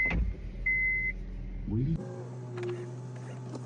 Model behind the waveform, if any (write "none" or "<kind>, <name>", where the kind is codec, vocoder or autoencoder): none